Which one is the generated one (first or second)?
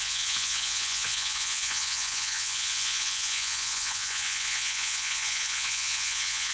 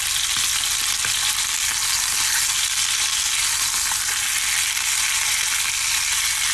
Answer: first